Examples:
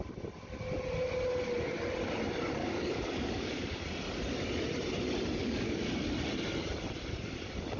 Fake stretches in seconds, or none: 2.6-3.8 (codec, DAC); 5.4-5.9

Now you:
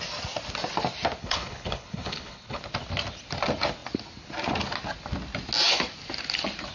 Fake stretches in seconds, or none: 1.2-2.6 (codec, HILCodec)